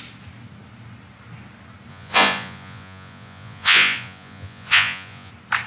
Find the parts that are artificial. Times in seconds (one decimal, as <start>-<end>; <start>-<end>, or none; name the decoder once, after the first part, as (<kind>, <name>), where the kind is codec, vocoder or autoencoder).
1.9-5.3 (vocoder, Vocos)